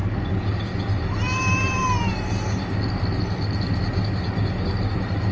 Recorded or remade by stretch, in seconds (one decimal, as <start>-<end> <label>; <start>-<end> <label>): 0.0-5.3 recorded

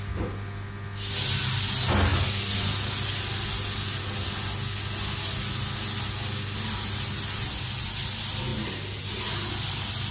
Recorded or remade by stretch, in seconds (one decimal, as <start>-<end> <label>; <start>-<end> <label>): 0.0-10.1 recorded

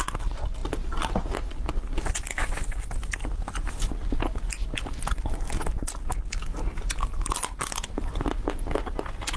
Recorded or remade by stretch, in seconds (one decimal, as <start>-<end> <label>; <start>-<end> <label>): 0.0-9.4 recorded

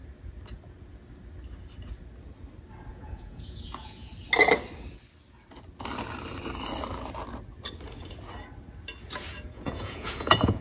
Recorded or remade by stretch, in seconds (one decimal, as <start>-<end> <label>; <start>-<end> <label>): 0.0-2.9 recorded; 2.9-4.1 remade; 4.1-9.3 recorded; 9.3-10.6 remade

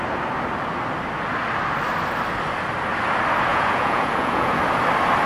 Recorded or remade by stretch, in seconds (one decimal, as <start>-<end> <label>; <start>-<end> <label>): 0.0-3.5 recorded; 3.5-4.6 remade; 4.6-5.3 recorded

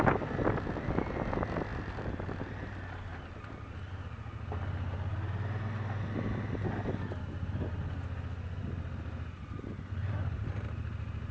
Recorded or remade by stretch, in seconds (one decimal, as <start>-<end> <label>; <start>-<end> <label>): 0.0-11.3 recorded

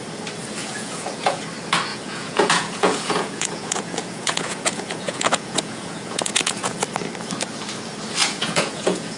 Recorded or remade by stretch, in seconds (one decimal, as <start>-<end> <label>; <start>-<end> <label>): 0.0-0.6 recorded; 0.6-1.4 remade; 1.4-1.9 recorded; 1.9-6.8 remade; 6.8-8.2 recorded; 8.2-9.2 remade

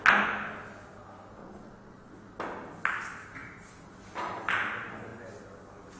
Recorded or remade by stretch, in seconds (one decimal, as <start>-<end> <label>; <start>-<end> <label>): 0.0-1.4 recorded; 1.4-2.1 remade; 2.1-6.0 recorded